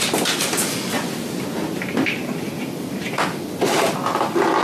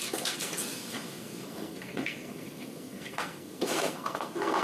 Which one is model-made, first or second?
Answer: second